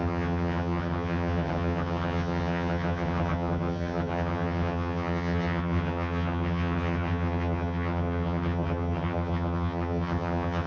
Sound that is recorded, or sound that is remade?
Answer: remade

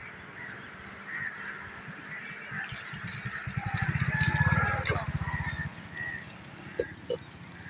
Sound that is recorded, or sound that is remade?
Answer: recorded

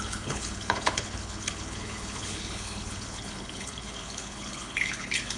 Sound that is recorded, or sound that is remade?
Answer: remade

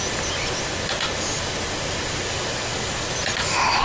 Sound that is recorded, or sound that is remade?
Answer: recorded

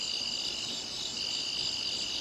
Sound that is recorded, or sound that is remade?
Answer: recorded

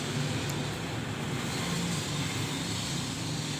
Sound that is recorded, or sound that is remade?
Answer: recorded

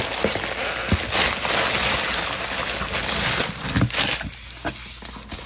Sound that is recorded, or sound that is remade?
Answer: recorded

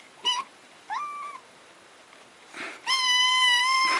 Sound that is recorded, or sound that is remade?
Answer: remade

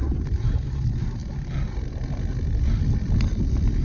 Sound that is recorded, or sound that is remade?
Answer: recorded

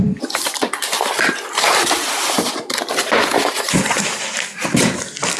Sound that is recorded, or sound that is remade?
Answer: remade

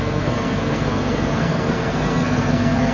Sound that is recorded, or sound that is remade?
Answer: remade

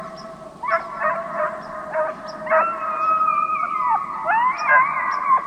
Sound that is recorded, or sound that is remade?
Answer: recorded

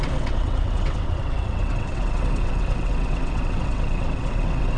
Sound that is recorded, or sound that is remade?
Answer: remade